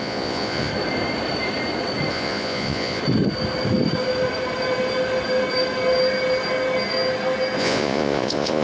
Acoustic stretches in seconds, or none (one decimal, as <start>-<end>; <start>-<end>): 0.7-2.1; 3.0-7.6